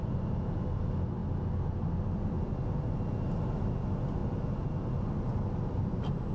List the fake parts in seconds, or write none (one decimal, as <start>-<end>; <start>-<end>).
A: none